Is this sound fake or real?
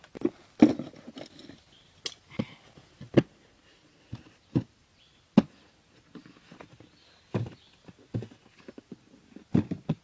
real